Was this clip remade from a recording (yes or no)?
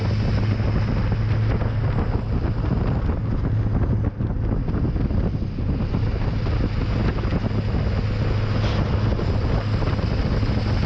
no